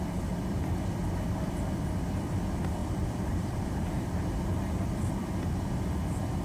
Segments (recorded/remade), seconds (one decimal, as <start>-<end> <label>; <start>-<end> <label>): 0.0-2.8 recorded; 2.8-5.5 remade; 5.5-6.4 recorded